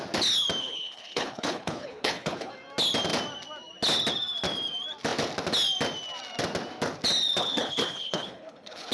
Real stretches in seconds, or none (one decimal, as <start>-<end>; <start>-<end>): 0.0-0.6; 2.5-7.4